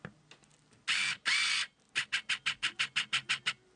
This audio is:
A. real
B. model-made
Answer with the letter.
A